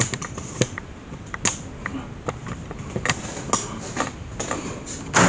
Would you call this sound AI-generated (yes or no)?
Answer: no